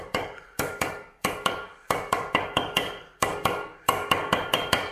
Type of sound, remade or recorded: remade